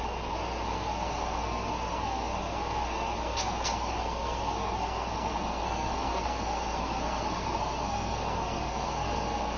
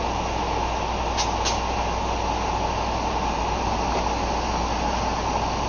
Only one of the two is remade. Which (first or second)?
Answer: first